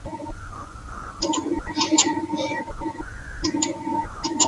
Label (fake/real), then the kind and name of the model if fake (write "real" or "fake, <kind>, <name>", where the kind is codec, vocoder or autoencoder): fake, vocoder, Vocos